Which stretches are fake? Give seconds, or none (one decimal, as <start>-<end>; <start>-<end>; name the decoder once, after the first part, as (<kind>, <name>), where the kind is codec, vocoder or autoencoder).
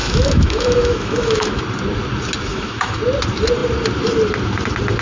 0.0-1.6 (autoencoder, DAC-VAE); 2.5-3.0